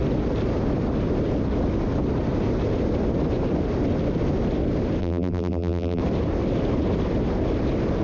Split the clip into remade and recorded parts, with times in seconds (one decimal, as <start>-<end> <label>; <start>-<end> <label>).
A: 0.0-5.0 recorded; 5.0-6.0 remade; 6.0-8.0 recorded